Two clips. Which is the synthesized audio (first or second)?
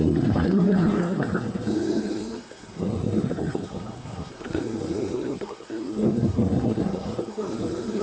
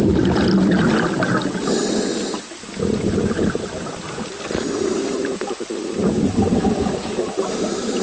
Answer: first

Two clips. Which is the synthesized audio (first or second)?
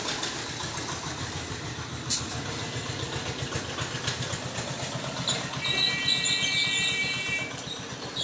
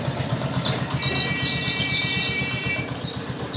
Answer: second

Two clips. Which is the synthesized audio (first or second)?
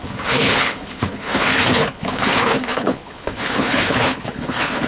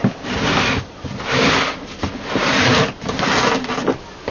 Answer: first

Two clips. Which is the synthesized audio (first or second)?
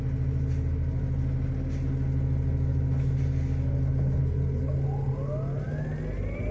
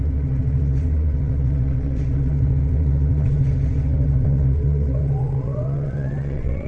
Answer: second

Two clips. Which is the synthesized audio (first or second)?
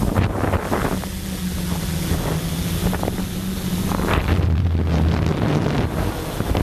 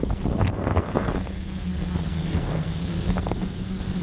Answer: second